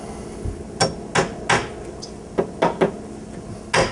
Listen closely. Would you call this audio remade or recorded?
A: recorded